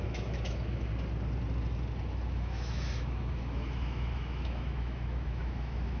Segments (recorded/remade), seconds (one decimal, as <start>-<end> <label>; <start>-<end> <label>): 0.0-0.9 remade; 0.9-2.3 recorded; 2.3-6.0 remade

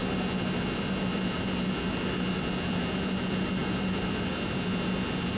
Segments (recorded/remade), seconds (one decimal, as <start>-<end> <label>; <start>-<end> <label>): 0.0-5.4 recorded

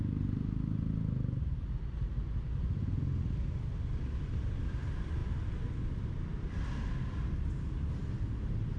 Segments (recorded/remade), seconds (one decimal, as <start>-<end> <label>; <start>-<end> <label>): 0.0-8.8 recorded

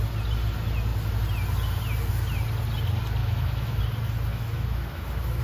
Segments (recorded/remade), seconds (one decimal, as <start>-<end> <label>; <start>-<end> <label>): 0.0-3.2 recorded; 3.2-3.8 remade; 3.8-4.3 recorded; 4.3-5.4 remade

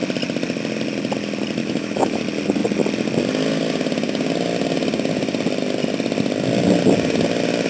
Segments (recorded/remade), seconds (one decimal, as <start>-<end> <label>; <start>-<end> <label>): 0.0-1.6 recorded; 1.6-2.2 remade; 2.2-7.7 recorded

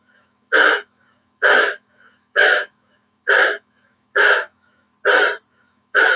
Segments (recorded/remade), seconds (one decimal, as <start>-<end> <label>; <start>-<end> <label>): 0.0-4.9 remade; 4.9-5.5 recorded; 5.5-6.2 remade